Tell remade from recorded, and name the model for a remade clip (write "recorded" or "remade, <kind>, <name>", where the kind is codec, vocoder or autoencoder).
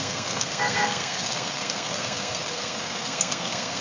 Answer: remade, codec, SNAC